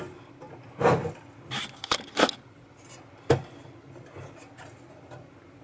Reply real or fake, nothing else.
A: real